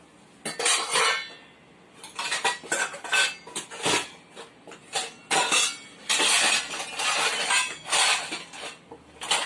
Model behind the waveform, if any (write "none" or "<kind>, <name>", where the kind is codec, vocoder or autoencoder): none